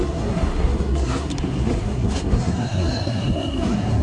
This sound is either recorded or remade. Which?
remade